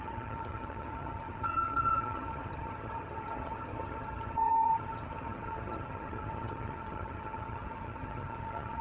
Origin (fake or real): fake